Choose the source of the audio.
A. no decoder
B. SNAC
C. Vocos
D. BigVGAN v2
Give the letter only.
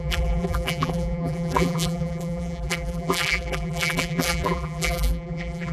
D